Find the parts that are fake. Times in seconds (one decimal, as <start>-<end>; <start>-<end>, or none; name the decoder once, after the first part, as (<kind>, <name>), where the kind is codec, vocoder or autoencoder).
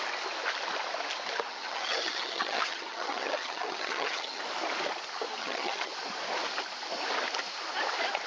1.5-4.4 (vocoder, HiFi-GAN); 5.4-5.9